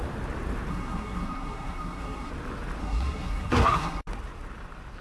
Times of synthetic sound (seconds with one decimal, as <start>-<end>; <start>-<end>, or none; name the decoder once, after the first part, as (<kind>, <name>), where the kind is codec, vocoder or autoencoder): 0.7-2.3 (codec, SNAC); 2.8-4.0